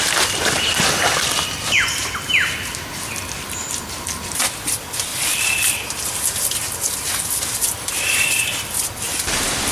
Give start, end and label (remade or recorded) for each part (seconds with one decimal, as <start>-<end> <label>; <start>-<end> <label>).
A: 0.0-2.0 remade; 2.0-4.2 recorded; 4.2-9.7 remade